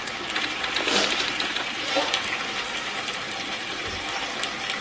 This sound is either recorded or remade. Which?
remade